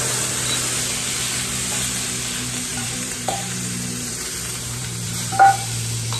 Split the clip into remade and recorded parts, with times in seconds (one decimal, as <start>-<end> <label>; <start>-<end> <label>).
0.0-2.7 recorded; 2.7-5.3 remade; 5.3-6.2 recorded